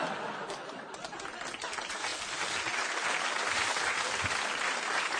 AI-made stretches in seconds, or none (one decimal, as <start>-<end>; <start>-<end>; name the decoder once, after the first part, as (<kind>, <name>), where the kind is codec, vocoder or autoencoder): none